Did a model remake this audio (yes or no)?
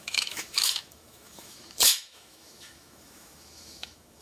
yes